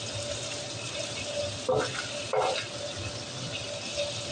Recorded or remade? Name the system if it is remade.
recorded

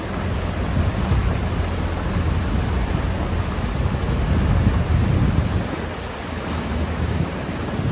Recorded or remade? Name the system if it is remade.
recorded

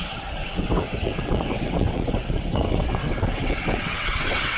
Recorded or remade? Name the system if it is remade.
remade, vocoder, WaveNeXt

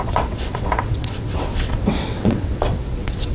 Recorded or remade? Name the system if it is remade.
remade, vocoder, WaveNeXt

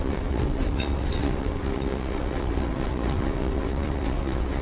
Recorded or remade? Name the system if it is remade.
remade, vocoder, WaveNeXt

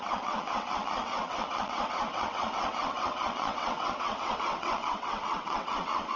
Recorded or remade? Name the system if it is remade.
remade, vocoder, WaveNeXt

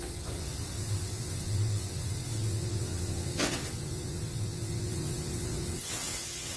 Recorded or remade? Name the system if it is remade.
remade, vocoder, WaveNeXt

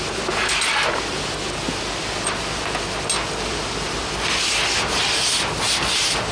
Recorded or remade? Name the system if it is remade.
recorded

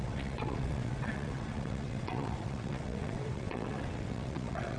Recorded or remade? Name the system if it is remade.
remade, vocoder, WaveNeXt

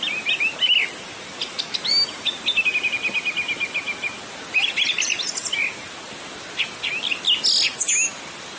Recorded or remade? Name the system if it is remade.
recorded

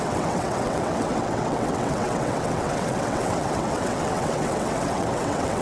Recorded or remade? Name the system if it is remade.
remade, vocoder, WaveNeXt